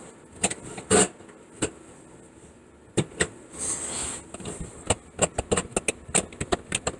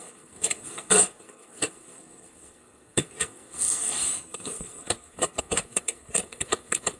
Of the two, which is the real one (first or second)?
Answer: first